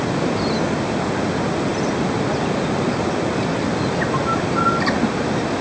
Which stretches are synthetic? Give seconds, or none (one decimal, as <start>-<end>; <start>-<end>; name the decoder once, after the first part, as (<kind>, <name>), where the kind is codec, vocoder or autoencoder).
none